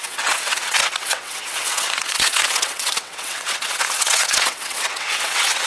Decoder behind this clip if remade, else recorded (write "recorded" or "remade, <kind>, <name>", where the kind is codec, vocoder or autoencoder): remade, vocoder, WaveNeXt